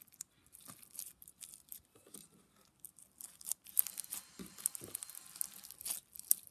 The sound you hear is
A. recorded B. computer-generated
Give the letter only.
A